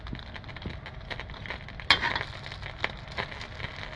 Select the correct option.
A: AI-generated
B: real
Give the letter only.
B